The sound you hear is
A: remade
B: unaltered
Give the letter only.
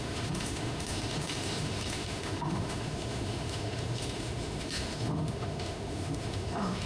A